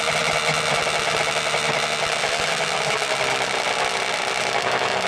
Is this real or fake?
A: real